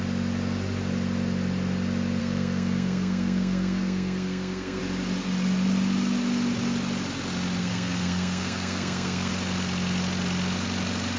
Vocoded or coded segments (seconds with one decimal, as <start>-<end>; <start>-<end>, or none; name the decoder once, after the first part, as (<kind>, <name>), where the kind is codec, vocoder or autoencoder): 2.2-4.8 (codec, SNAC); 7.6-9.3

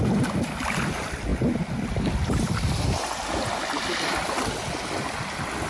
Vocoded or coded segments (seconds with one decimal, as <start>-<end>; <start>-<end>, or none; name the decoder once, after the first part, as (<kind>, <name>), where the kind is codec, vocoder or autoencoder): none

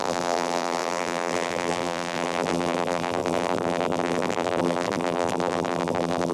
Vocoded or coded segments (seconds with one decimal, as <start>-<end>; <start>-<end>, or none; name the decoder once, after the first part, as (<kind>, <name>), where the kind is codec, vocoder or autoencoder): 0.0-6.3 (vocoder, BigVGAN v2)

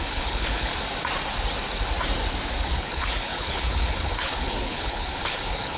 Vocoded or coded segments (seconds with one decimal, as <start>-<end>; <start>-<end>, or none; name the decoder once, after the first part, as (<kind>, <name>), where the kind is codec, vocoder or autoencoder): 0.0-0.7 (codec, HILCodec); 2.7-5.8

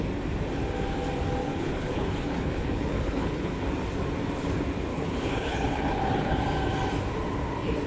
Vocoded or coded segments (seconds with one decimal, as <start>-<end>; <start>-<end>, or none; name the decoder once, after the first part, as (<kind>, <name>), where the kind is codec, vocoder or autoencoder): 1.4-3.6 (codec, HILCodec); 4.9-6.4